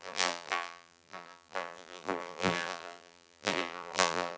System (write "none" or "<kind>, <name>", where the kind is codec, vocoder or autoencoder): vocoder, BigVGAN v2